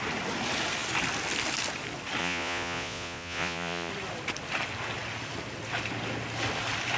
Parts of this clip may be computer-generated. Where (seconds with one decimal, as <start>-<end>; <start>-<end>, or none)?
2.2-3.9